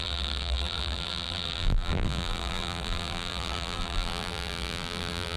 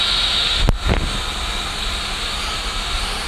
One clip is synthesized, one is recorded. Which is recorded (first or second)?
second